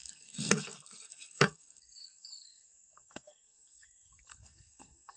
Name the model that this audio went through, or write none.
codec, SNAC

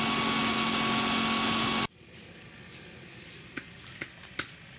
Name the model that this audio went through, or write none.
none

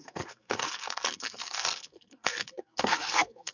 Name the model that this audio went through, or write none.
codec, SNAC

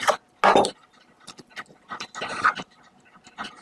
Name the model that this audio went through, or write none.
none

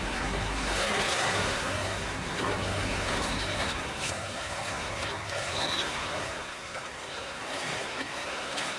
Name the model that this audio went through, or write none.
codec, SNAC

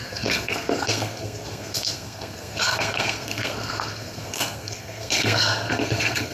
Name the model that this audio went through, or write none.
codec, SNAC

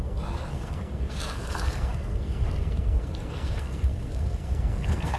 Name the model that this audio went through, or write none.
codec, SNAC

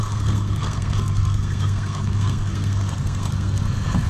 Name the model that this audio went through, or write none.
codec, SNAC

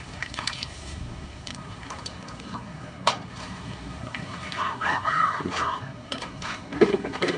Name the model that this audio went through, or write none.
codec, SNAC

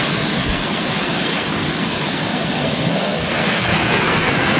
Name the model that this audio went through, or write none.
codec, SNAC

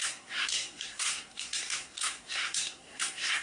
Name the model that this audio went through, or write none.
codec, SNAC